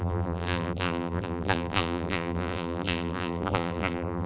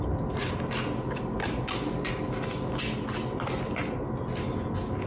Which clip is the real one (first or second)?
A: second